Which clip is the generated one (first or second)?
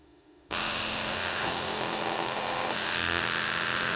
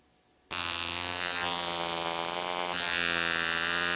first